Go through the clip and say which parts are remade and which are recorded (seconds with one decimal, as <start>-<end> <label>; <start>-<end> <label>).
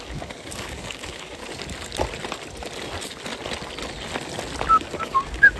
0.0-1.4 remade; 1.4-4.7 recorded; 4.7-5.6 remade